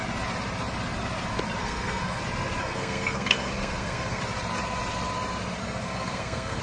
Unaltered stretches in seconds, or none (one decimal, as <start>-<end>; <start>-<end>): 0.0-1.6; 2.2-2.6; 4.2-5.6